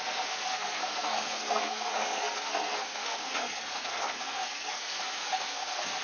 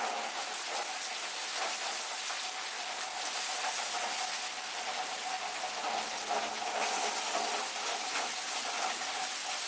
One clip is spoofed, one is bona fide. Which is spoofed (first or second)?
first